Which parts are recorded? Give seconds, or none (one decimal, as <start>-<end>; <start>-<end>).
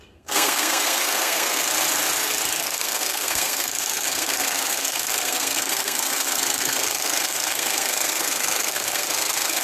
1.7-2.6